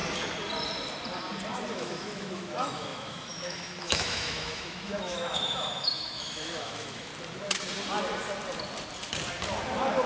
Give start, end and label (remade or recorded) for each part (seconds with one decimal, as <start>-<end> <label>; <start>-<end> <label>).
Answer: 0.0-1.7 recorded; 1.7-7.1 remade; 7.1-10.1 recorded